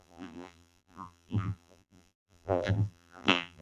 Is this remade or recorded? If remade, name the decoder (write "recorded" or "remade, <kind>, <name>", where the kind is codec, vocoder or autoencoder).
remade, vocoder, BigVGAN v2